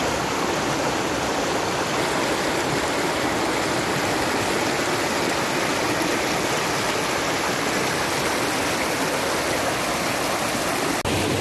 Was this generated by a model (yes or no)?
no